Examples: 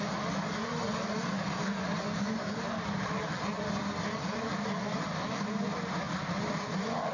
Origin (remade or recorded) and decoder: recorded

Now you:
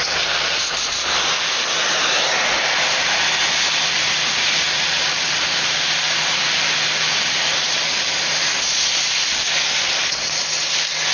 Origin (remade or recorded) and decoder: recorded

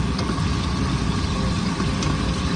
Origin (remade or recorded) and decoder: recorded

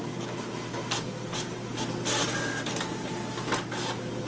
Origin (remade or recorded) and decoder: recorded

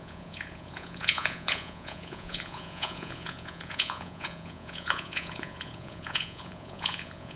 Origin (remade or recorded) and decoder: remade, vocoder, Vocos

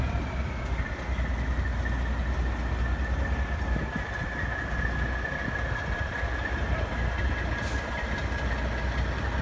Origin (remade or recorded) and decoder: recorded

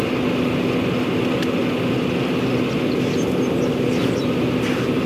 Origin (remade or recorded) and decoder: recorded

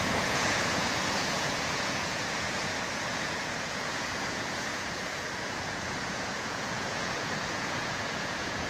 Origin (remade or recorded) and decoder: remade, vocoder, Vocos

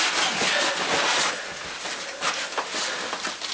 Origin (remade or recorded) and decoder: recorded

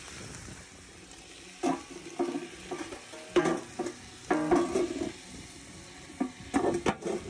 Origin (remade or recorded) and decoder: recorded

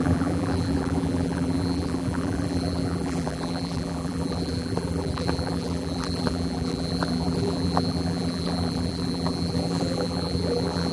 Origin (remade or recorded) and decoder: remade, vocoder, BigVGAN v2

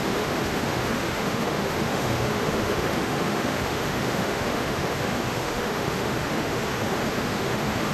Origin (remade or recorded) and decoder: remade, autoencoder, DAC-VAE